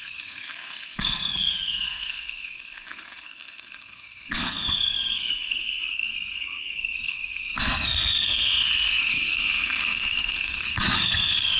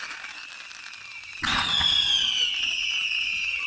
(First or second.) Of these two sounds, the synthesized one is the first